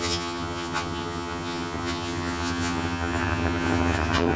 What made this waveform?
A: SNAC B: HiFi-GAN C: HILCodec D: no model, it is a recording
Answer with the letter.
B